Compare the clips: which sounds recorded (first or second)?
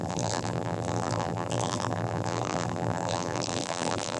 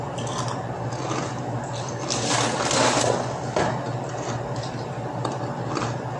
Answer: second